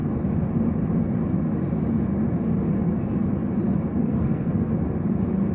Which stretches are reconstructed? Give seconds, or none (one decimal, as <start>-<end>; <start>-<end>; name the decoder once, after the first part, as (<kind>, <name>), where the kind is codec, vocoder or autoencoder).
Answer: 4.0-4.7 (codec, SNAC)